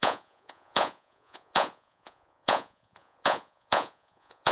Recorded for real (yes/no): no